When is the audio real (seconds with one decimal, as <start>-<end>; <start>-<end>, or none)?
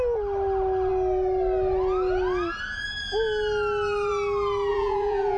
0.0-4.7